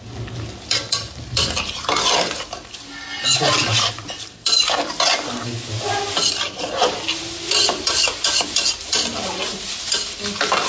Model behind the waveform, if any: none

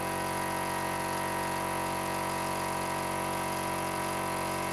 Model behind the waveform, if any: vocoder, Vocos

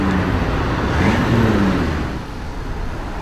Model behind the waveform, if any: none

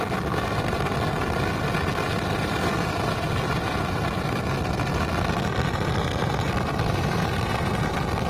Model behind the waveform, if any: none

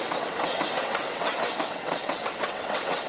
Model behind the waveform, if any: vocoder, WaveNeXt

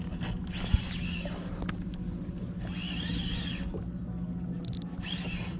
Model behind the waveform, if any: none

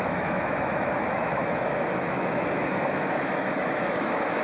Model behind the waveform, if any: autoencoder, DAC-VAE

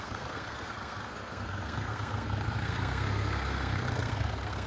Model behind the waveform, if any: codec, SNAC